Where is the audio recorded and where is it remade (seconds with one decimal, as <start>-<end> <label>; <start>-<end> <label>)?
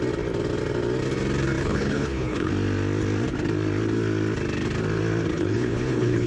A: 0.0-1.6 recorded; 1.6-2.5 remade; 2.5-5.3 recorded; 5.3-6.3 remade